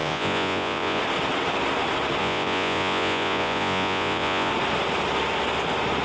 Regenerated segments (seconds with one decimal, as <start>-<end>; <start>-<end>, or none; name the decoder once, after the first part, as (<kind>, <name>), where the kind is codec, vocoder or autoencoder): 0.0-1.0 (vocoder, Vocos); 2.2-4.5